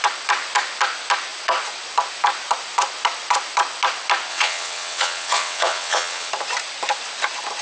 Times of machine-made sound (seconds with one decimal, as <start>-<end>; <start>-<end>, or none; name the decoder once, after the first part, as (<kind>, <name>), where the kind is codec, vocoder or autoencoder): 4.3-6.3 (vocoder, WaveNeXt)